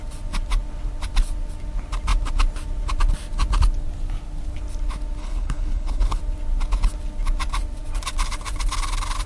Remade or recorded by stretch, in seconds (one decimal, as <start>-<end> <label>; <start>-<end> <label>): 0.0-5.2 recorded; 5.2-6.2 remade; 6.2-9.3 recorded